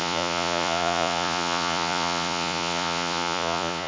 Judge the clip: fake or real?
fake